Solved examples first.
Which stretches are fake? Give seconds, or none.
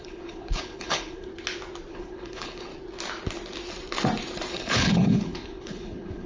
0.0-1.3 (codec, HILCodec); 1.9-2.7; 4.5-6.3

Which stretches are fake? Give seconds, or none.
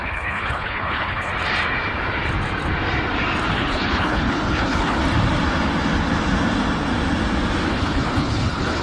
0.0-1.3 (codec, HILCodec); 3.5-5.0; 7.7-8.8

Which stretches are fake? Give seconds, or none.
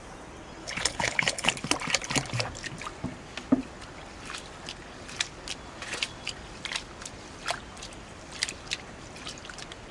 0.6-1.5 (codec, HILCodec)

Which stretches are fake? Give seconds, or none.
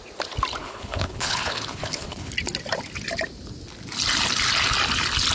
0.6-2.3 (codec, HILCodec)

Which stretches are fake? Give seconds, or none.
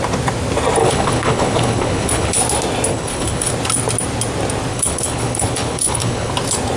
0.8-2.4 (codec, HILCodec); 2.9-3.5; 4.7-6.3